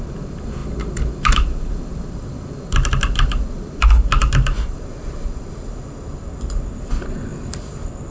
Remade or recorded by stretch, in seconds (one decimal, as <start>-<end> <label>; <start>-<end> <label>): 0.0-8.1 recorded